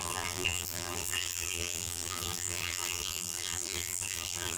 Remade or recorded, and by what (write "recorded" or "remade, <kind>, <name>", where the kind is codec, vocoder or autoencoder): remade, vocoder, BigVGAN v2